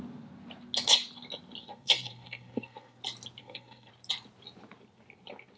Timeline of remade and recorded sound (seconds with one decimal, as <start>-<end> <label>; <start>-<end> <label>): 0.0-1.6 recorded; 1.6-3.0 remade; 3.0-3.4 recorded; 3.4-3.9 remade; 3.9-5.6 recorded